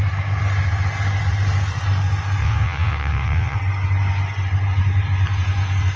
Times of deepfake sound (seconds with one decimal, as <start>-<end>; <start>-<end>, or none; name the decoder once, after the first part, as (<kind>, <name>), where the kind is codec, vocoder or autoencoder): 2.4-3.6 (vocoder, WaveNeXt)